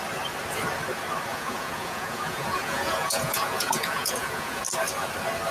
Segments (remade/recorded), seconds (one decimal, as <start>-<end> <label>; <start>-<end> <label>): 0.0-1.3 recorded; 1.3-4.6 remade; 4.6-5.5 recorded